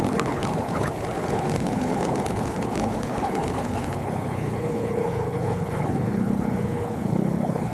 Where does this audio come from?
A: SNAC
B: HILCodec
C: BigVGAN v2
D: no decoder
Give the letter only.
B